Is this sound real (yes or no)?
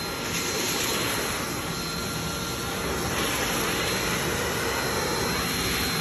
yes